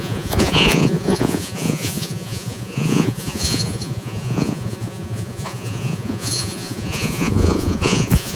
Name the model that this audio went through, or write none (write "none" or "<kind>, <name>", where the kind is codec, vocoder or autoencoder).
vocoder, Vocos